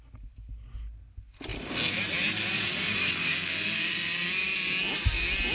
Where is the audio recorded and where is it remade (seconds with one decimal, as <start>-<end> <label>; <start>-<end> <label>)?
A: 0.0-5.5 recorded